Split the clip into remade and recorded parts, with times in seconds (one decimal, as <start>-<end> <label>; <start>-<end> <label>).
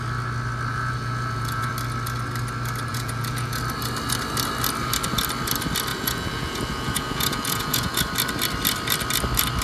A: 0.0-0.7 recorded; 0.7-1.7 remade; 1.7-2.9 recorded; 2.9-3.6 remade; 3.6-5.9 recorded; 5.9-8.0 remade; 8.0-9.6 recorded